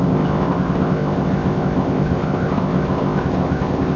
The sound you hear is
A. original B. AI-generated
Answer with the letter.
B